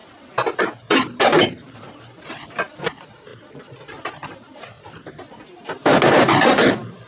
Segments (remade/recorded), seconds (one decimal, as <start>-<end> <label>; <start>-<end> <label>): 0.0-0.6 recorded; 0.6-3.3 remade; 3.3-6.1 recorded; 6.1-7.1 remade